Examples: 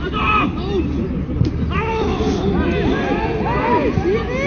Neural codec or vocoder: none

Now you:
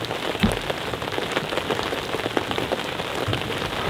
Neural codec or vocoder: none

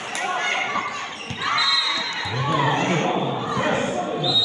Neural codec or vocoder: vocoder, BigVGAN v2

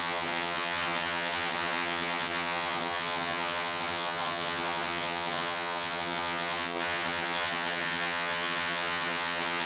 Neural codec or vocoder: vocoder, HiFi-GAN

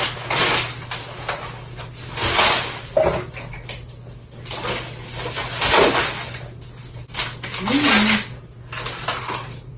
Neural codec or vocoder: none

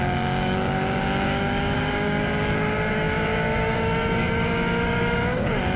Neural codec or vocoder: codec, DAC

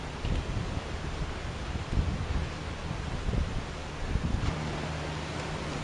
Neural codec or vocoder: vocoder, BigVGAN v2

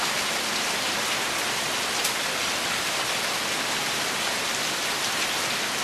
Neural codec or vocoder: none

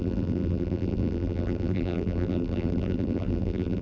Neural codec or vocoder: vocoder, BigVGAN v2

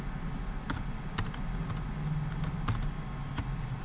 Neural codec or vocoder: none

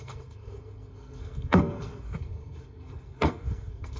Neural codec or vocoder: codec, SNAC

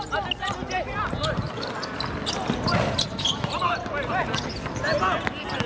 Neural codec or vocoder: none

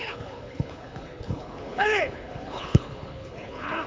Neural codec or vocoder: codec, HILCodec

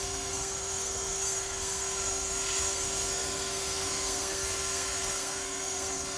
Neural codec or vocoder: codec, SNAC